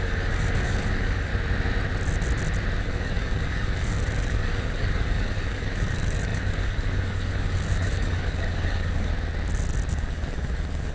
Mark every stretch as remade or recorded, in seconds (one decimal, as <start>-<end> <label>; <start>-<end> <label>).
0.0-1.3 remade; 1.3-2.8 recorded; 2.8-9.1 remade; 9.1-9.9 recorded; 9.9-10.9 remade